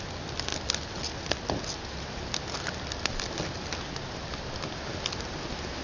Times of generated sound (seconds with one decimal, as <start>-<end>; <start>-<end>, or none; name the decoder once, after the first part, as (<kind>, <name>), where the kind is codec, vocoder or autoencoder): none